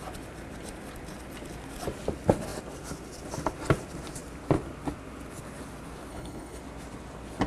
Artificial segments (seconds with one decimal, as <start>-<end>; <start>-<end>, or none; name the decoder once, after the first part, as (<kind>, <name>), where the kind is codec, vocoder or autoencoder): 6.1-6.6 (codec, HILCodec)